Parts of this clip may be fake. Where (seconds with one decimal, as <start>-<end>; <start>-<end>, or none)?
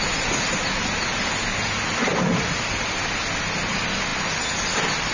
none